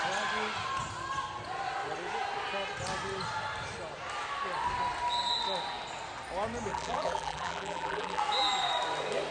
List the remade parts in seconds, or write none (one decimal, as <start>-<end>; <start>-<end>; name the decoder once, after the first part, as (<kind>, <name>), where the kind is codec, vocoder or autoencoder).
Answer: 6.7-8.2 (vocoder, BigVGAN v2)